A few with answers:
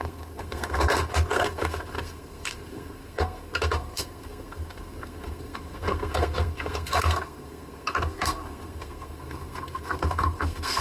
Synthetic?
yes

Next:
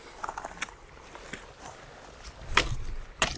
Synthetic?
no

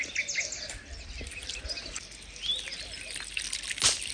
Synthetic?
no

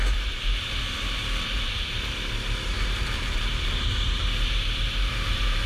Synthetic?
yes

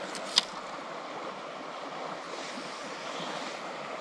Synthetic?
no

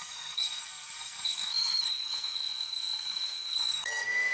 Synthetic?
yes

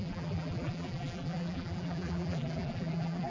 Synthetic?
yes